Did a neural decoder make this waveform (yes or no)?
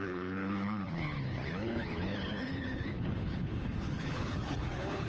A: yes